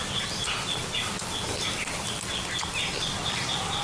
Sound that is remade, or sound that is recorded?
recorded